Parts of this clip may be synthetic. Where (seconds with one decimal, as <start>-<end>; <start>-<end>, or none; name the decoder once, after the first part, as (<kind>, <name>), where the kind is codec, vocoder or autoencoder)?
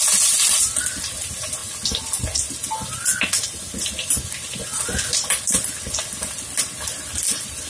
none